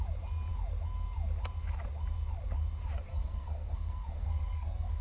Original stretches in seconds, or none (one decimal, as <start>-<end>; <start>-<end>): 0.0-3.1